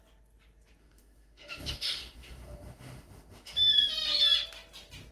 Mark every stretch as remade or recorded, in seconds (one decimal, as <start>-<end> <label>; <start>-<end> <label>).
0.0-0.8 recorded; 0.8-3.9 remade; 3.9-5.1 recorded